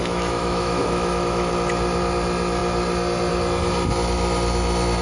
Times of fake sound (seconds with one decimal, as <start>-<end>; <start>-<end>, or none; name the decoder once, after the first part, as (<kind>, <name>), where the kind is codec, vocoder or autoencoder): 0.0-1.5 (autoencoder, DAC-VAE)